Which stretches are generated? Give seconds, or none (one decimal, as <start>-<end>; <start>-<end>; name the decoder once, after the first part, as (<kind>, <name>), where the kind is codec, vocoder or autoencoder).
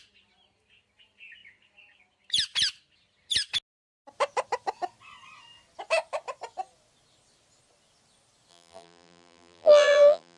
8.5-10.4 (vocoder, BigVGAN v2)